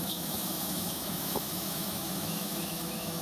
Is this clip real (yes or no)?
no